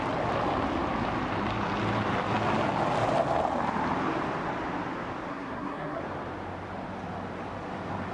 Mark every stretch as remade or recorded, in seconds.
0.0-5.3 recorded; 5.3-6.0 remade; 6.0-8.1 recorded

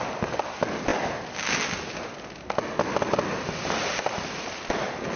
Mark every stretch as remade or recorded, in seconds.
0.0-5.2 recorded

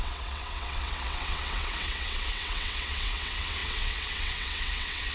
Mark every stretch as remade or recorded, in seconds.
0.0-5.1 remade

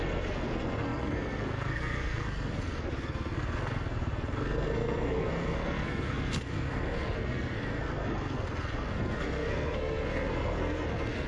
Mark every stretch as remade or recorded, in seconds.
0.0-11.3 remade